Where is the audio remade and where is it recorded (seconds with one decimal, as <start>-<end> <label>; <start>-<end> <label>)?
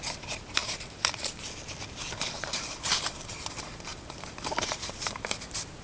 0.0-5.8 remade